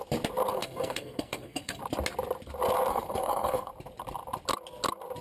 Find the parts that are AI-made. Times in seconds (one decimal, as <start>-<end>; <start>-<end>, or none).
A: 0.5-1.8; 2.9-3.7